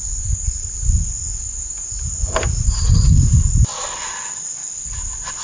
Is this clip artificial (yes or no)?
no